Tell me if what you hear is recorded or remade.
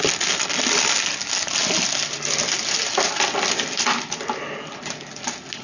recorded